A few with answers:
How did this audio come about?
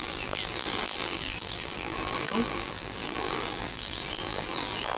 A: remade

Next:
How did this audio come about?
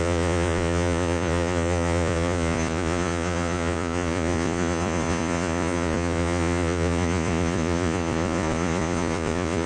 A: remade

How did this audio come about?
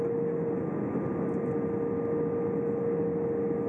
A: recorded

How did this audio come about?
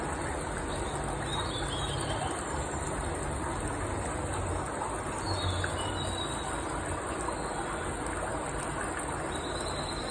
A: recorded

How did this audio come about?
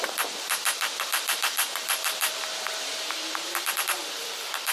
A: remade